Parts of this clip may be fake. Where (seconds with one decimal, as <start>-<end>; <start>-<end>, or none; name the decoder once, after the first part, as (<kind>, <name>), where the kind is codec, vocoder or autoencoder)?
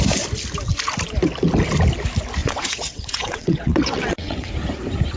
2.4-4.5 (vocoder, WaveNeXt)